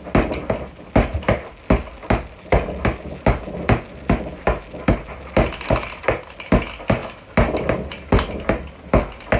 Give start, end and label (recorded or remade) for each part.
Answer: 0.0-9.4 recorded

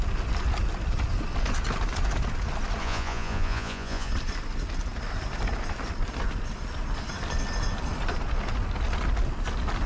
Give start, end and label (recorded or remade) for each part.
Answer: 0.0-2.8 recorded; 2.8-4.1 remade; 4.1-9.9 recorded

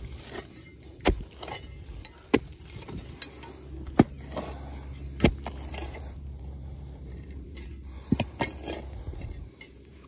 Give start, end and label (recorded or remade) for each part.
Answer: 0.0-0.7 remade; 0.7-5.7 recorded; 5.7-7.7 remade; 7.7-9.2 recorded; 9.2-10.1 remade

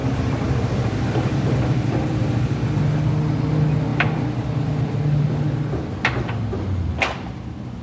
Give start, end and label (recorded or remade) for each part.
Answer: 0.0-2.8 remade; 2.8-3.9 recorded; 3.9-5.3 remade; 5.3-7.8 recorded